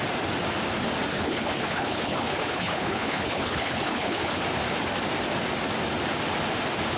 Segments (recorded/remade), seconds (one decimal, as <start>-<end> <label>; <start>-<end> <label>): 0.0-1.1 recorded; 1.1-4.4 remade; 4.4-7.0 recorded